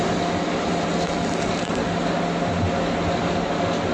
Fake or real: real